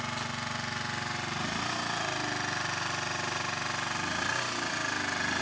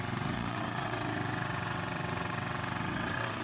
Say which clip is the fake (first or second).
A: second